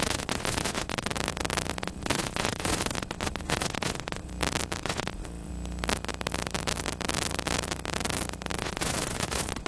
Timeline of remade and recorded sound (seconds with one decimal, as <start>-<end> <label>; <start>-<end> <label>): 0.0-1.1 remade; 1.1-1.8 recorded; 1.8-4.3 remade; 4.3-4.8 recorded; 4.8-5.5 remade; 5.5-8.6 recorded; 8.6-9.7 remade